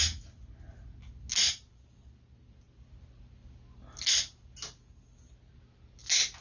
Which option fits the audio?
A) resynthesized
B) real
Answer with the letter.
B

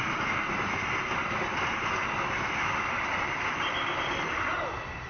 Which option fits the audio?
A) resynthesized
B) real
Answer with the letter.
B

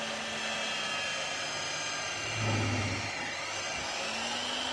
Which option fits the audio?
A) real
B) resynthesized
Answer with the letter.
A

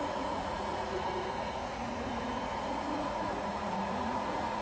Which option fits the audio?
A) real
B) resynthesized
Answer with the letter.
B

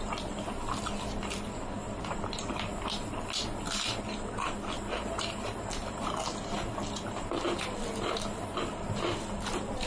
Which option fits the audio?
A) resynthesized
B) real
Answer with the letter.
B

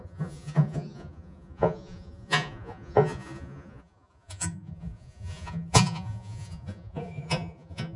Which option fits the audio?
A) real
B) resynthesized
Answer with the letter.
B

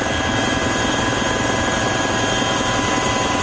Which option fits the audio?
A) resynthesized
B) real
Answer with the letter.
B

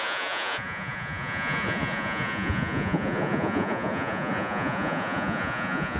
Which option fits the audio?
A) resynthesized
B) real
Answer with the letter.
A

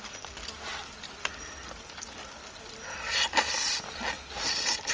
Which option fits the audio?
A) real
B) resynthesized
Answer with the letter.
A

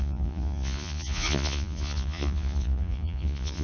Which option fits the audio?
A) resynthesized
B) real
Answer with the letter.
A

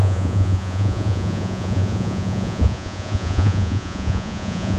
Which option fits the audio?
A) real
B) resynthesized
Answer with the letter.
B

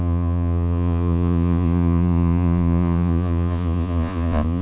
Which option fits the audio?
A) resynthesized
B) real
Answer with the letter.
A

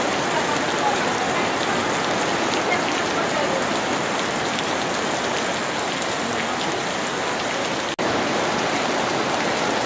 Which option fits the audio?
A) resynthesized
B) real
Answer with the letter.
B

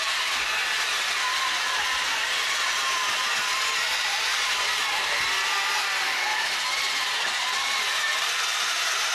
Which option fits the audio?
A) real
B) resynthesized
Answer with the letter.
A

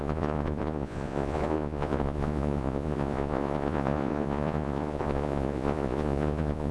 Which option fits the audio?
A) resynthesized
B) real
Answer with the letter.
A